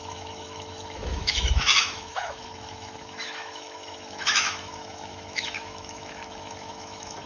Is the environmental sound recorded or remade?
remade